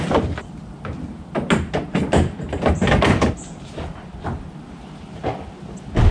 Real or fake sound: real